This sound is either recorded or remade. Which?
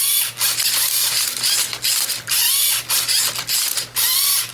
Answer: recorded